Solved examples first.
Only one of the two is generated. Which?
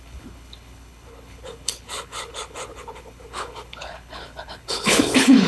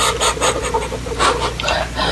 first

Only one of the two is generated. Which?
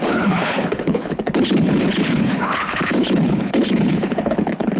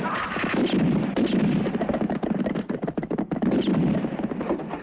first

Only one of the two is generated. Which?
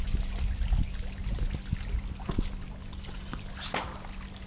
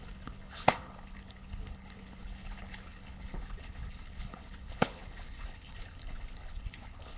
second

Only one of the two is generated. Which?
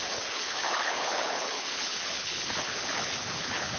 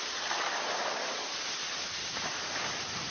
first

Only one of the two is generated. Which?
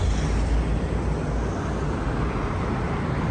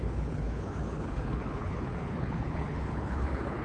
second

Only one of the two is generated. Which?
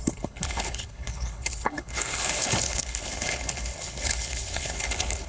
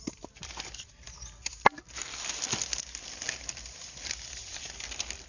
first